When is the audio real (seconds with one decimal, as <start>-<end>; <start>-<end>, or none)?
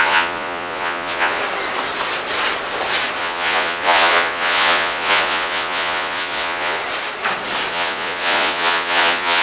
1.4-3.2; 6.8-7.7